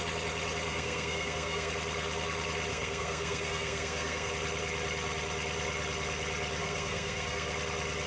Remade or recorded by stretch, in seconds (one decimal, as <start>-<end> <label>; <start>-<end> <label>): 0.0-0.7 recorded; 0.7-1.7 remade; 1.7-2.7 recorded; 2.7-4.3 remade; 4.3-6.6 recorded; 6.6-7.5 remade; 7.5-8.1 recorded